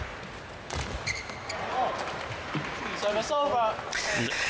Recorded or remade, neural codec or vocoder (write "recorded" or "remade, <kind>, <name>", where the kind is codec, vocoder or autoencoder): recorded